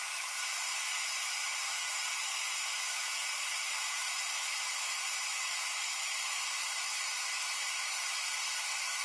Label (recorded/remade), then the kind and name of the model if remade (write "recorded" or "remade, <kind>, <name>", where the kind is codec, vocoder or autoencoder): remade, autoencoder, DAC-VAE